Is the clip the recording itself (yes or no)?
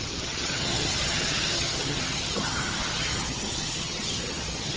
no